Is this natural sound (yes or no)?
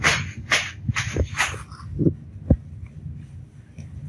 yes